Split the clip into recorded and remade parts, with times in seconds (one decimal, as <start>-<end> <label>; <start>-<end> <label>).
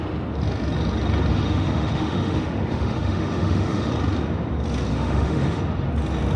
0.0-1.3 recorded; 1.3-3.9 remade; 3.9-4.9 recorded; 4.9-5.6 remade; 5.6-6.4 recorded